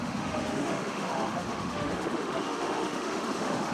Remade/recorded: remade